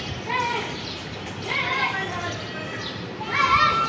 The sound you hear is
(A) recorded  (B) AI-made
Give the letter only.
A